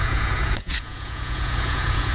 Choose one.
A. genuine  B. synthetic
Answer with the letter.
B